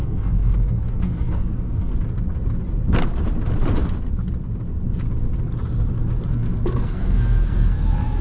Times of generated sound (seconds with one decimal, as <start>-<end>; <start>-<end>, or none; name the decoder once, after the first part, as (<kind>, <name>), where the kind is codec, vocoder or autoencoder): 0.0-1.9 (codec, SNAC); 6.3-8.2